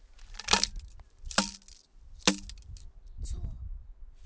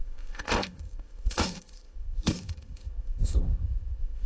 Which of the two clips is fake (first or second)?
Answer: second